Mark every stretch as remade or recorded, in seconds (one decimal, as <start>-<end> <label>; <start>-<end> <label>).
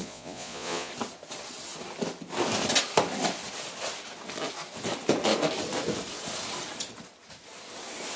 0.0-0.9 remade; 0.9-8.2 recorded